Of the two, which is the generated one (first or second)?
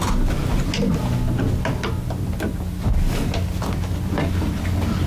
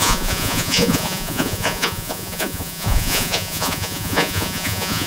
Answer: second